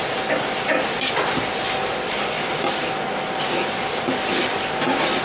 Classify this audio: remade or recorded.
recorded